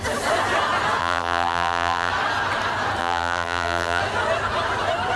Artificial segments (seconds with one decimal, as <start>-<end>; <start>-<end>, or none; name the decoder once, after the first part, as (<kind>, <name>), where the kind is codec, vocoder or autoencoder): 1.0-2.1 (vocoder, BigVGAN v2); 3.0-4.0